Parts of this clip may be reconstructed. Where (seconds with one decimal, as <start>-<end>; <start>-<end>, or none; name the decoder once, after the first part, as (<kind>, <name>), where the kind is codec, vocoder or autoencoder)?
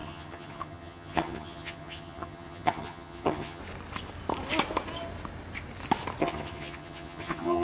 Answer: 0.0-3.6 (vocoder, HiFi-GAN); 6.2-7.6